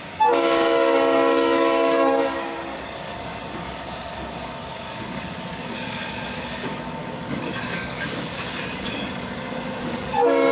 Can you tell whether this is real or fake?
fake